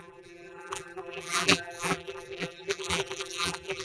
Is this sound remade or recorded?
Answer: remade